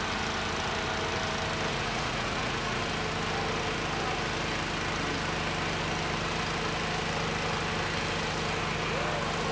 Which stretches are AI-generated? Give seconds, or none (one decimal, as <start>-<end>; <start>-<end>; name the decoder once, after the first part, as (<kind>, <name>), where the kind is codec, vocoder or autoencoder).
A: 1.7-2.8 (vocoder, Vocos)